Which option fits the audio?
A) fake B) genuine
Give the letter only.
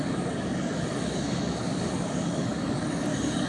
A